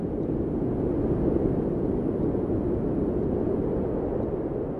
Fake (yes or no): no